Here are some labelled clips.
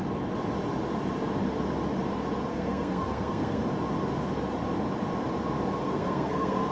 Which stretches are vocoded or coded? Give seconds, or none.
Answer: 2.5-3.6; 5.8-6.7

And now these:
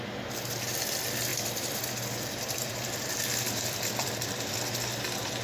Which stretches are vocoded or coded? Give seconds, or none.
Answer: 1.3-4.5

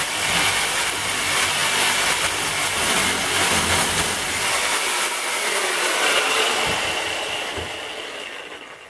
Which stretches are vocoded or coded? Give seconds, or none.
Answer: none

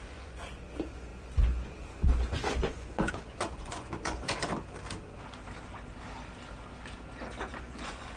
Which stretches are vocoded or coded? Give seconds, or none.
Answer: 0.0-4.5; 7.5-8.2